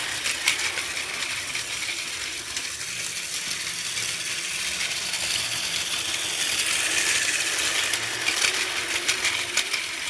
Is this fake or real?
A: real